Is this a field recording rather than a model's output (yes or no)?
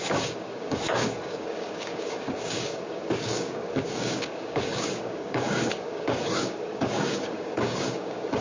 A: no